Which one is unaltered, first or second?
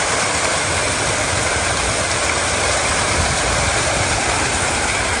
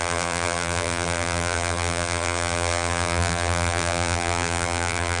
first